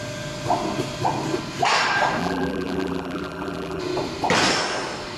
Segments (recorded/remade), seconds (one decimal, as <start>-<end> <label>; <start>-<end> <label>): 0.0-2.2 recorded; 2.2-3.8 remade; 3.8-5.2 recorded